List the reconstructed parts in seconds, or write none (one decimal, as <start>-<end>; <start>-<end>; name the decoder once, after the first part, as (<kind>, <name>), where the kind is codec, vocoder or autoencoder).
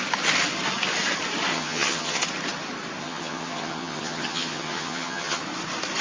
1.5-2.2 (vocoder, HiFi-GAN); 3.0-5.4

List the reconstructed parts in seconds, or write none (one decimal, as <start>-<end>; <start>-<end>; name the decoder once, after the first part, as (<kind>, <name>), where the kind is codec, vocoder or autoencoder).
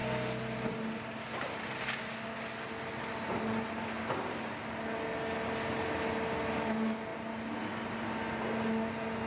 none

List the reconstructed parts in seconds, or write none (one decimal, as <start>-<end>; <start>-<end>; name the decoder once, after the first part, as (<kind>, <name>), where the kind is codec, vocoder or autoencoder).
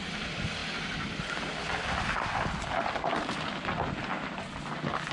none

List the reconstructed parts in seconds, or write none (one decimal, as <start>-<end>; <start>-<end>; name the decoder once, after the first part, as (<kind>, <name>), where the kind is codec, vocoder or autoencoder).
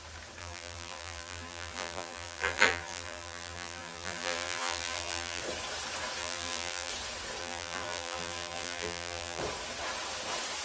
0.4-5.4 (vocoder, BigVGAN v2); 6.2-6.9; 7.4-9.4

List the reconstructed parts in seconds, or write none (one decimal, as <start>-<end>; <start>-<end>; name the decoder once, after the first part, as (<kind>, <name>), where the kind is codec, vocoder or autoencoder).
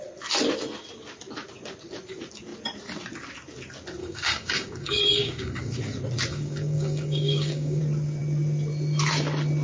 4.0-5.8 (codec, DAC); 6.3-7.8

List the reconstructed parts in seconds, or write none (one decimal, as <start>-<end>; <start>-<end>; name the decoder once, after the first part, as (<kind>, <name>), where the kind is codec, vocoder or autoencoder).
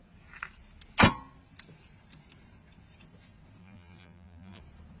3.6-4.6 (vocoder, BigVGAN v2)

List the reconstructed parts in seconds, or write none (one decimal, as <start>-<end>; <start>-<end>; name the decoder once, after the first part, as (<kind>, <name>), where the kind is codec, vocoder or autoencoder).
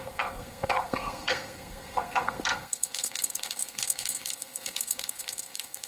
0.0-5.9 (codec, SNAC)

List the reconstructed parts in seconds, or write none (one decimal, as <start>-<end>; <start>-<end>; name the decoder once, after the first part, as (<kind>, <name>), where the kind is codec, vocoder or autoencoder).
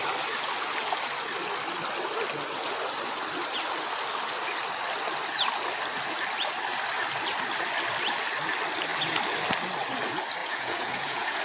10.4-11.4 (vocoder, Vocos)